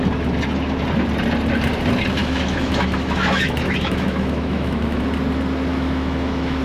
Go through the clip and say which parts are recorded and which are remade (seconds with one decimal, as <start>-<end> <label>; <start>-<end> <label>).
0.0-2.2 recorded; 2.2-5.0 remade; 5.0-5.7 recorded; 5.7-6.6 remade